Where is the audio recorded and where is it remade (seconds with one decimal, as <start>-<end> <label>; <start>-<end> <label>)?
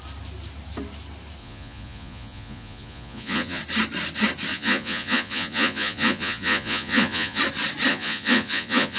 0.0-1.4 recorded; 1.4-3.6 remade; 3.6-4.5 recorded; 4.5-7.4 remade; 7.4-7.9 recorded; 7.9-9.0 remade